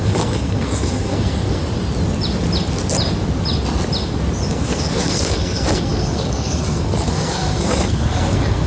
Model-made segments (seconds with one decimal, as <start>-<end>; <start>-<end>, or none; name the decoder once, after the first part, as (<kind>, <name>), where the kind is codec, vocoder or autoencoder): 0.0-1.6 (codec, SNAC); 4.5-8.7